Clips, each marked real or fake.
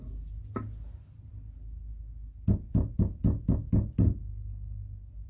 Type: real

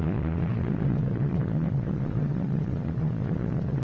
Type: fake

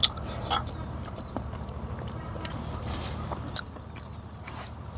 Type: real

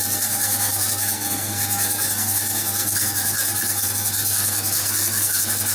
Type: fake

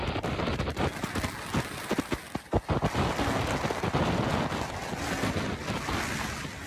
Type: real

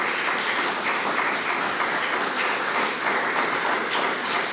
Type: real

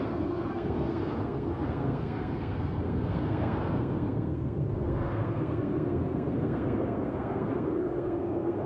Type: fake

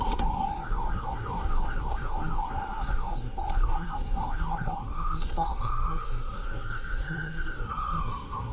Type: fake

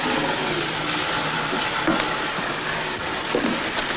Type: real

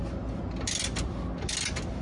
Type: real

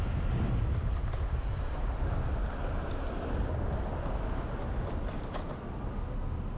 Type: real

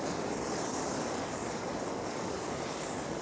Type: fake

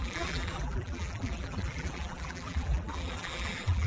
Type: fake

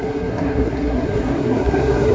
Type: fake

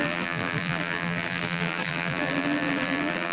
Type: fake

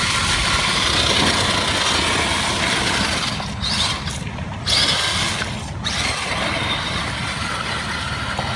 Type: real